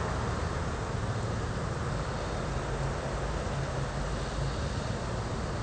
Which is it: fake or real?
real